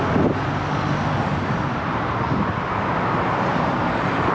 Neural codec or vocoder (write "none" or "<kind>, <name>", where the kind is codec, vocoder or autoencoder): none